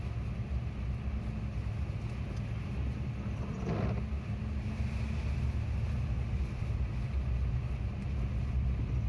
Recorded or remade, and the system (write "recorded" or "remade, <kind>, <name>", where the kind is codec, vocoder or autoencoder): recorded